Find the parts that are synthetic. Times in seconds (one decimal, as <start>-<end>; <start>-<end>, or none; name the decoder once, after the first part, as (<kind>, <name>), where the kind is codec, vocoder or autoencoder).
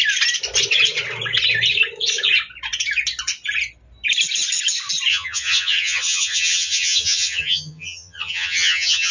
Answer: 5.1-9.1 (vocoder, HiFi-GAN)